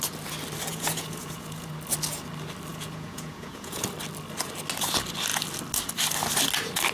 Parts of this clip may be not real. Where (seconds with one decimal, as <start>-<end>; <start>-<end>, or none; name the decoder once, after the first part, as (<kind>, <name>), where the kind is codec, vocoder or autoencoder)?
0.7-1.7 (vocoder, Vocos); 2.7-3.8